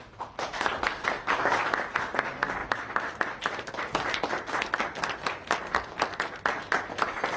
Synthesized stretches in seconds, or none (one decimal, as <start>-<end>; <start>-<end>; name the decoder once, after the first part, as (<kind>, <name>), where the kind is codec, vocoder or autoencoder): none